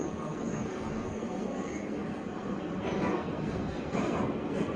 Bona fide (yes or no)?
no